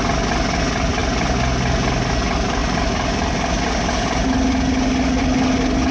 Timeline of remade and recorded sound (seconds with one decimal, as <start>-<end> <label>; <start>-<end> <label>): 0.0-5.9 recorded